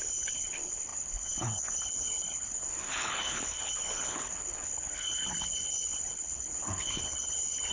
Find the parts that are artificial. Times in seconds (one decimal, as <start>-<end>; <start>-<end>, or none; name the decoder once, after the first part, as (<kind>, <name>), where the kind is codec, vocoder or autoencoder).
0.0-7.7 (codec, HILCodec)